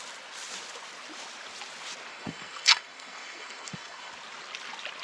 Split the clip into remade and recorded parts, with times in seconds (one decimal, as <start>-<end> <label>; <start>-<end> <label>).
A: 0.0-2.1 recorded; 2.1-4.1 remade; 4.1-5.0 recorded